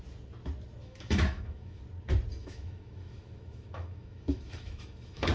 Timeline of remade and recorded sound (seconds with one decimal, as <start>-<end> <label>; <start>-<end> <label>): 0.0-0.8 recorded; 0.8-1.8 remade; 1.8-2.4 recorded; 2.4-5.3 remade